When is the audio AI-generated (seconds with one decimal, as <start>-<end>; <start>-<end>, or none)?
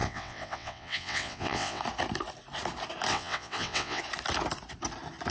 0.0-1.8; 3.1-4.0